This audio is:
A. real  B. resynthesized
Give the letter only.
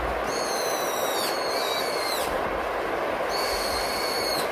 A